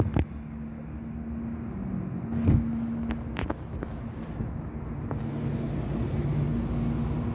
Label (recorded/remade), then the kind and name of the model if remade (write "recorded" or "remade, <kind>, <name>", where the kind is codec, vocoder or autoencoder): recorded